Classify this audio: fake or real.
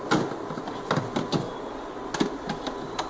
real